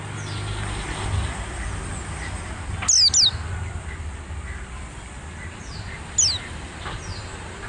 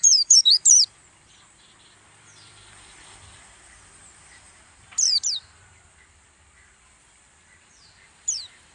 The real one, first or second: first